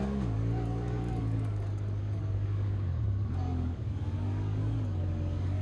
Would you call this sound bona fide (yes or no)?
no